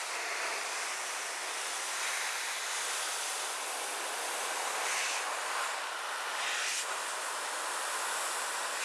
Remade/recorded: recorded